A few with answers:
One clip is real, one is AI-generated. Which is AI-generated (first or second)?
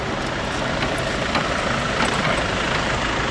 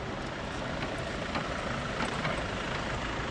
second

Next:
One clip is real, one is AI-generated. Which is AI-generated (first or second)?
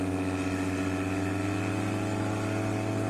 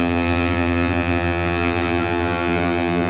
second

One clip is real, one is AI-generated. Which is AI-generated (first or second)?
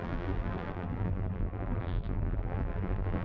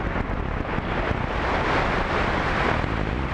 first